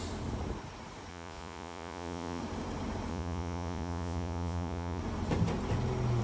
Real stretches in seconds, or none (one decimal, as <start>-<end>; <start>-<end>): 0.0-1.1; 2.4-3.1; 5.0-6.2